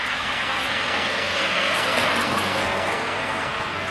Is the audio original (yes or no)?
no